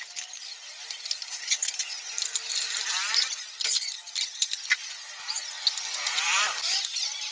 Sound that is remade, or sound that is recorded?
recorded